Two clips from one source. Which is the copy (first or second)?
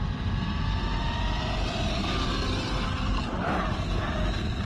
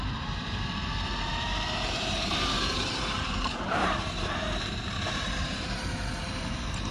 second